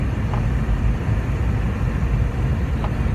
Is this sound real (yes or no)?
yes